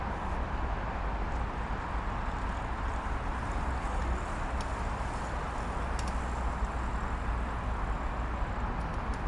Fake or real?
real